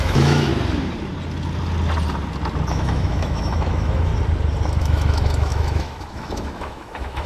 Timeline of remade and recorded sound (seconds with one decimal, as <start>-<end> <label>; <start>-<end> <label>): 0.0-0.5 remade; 0.5-2.7 recorded; 2.7-4.1 remade; 4.1-4.8 recorded; 4.8-7.3 remade